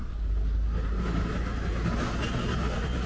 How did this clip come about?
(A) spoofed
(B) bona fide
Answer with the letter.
B